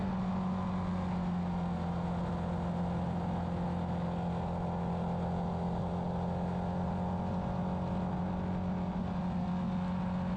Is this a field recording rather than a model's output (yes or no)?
yes